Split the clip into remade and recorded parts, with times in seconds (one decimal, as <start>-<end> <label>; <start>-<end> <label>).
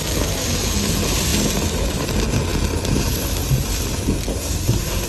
0.0-4.3 recorded; 4.3-5.1 remade